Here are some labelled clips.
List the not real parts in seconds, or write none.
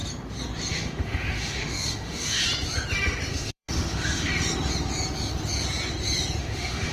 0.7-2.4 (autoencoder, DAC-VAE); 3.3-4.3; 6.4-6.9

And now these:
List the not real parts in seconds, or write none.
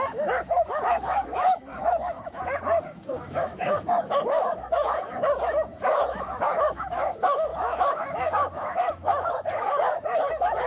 0.0-10.7 (autoencoder, DAC-VAE)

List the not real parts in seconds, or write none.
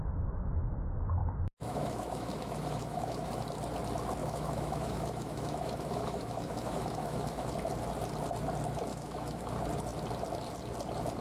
1.2-3.3 (autoencoder, DAC-VAE); 4.2-7.5; 8.9-9.5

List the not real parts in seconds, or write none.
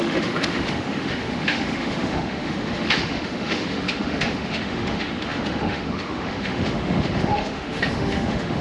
0.0-8.6 (autoencoder, DAC-VAE)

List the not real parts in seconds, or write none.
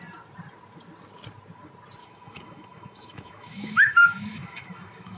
2.0-5.2 (autoencoder, DAC-VAE)